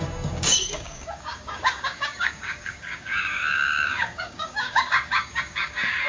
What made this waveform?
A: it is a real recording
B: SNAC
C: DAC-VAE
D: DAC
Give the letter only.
D